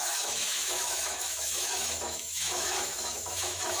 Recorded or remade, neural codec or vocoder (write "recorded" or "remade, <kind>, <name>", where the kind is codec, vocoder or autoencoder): remade, autoencoder, DAC-VAE